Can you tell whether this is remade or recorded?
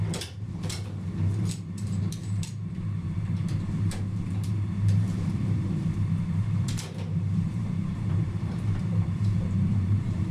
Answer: remade